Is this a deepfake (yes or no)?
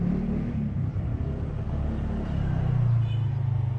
no